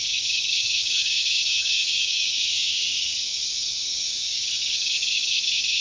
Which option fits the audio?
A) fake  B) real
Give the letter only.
A